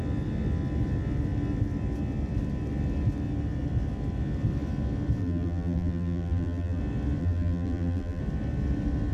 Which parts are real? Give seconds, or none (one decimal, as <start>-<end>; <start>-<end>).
0.0-5.2; 6.8-7.2; 8.2-9.1